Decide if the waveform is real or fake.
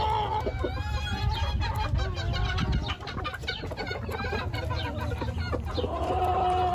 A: real